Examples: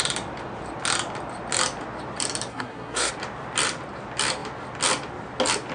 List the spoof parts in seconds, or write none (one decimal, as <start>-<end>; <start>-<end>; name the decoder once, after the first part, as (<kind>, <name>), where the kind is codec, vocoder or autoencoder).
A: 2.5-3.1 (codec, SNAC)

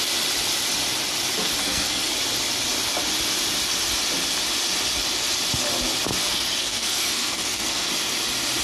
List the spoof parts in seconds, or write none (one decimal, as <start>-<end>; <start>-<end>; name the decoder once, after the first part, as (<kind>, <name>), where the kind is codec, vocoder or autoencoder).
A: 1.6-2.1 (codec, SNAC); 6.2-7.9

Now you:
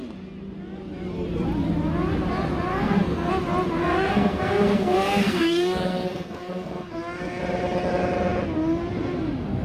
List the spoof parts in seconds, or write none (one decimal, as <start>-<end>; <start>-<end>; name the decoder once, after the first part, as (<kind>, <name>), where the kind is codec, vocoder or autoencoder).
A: 2.7-3.3 (codec, SNAC); 3.8-7.4

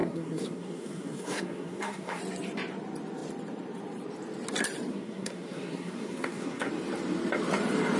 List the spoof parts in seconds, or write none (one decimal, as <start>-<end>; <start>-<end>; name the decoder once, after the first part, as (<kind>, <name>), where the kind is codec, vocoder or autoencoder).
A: 0.0-2.2 (codec, SNAC); 4.9-6.7

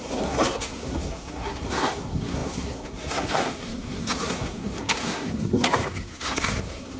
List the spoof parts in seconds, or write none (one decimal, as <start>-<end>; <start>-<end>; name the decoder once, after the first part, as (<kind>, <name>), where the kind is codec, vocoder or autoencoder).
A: 0.0-7.0 (codec, SNAC)

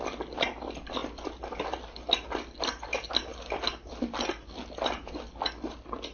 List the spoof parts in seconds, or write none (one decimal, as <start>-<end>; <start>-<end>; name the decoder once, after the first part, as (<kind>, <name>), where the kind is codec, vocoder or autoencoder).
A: none

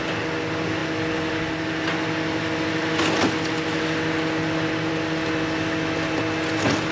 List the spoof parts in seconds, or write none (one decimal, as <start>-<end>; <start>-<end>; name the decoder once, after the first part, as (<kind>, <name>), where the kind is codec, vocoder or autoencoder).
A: none